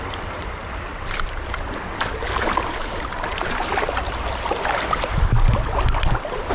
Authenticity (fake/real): real